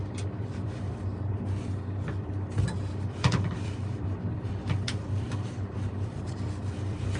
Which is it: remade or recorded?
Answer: remade